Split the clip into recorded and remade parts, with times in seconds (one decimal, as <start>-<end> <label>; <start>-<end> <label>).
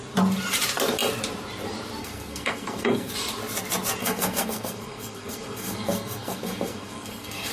0.0-2.0 recorded; 2.0-3.1 remade; 3.1-4.0 recorded; 4.0-7.5 remade